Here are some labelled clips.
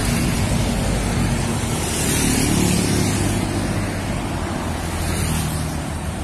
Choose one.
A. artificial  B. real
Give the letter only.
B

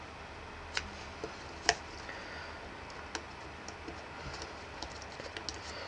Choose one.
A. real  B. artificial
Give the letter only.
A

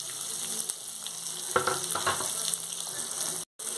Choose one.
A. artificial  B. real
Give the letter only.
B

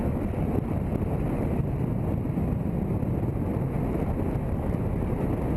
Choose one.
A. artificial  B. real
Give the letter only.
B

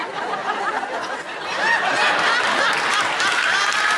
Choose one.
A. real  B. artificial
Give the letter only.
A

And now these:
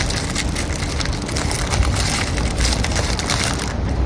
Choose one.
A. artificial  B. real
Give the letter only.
B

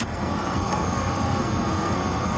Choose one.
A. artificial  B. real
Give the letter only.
A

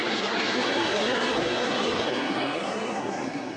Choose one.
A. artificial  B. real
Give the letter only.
A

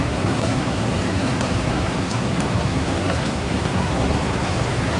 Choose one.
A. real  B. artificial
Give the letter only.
B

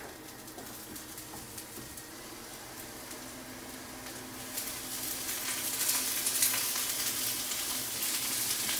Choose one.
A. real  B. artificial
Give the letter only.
A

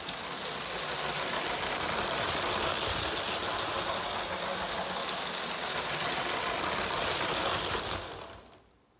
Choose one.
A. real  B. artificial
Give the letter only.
A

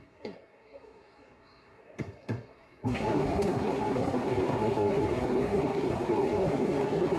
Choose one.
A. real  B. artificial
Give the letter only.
B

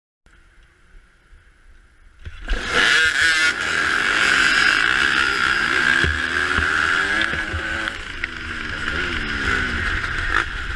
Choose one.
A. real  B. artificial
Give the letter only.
A